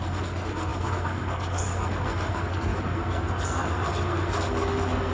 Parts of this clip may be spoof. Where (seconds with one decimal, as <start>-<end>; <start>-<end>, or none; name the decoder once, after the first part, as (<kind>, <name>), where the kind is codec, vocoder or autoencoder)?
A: 0.0-5.1 (codec, SNAC)